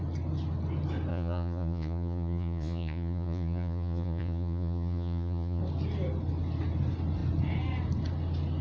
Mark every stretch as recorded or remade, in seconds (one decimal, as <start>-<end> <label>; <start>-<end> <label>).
0.0-1.1 recorded; 1.1-5.6 remade; 5.6-8.6 recorded